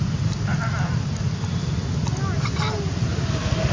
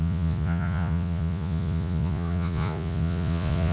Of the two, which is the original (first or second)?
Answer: first